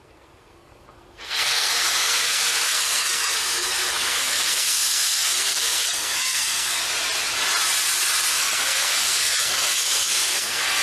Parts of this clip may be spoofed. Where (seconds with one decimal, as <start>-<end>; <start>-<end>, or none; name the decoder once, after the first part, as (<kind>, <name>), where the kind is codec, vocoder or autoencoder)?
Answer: 0.0-6.8 (codec, SNAC); 8.3-10.8